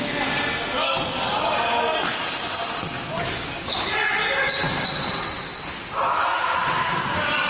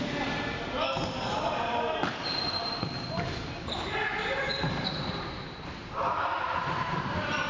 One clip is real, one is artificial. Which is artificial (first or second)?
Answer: second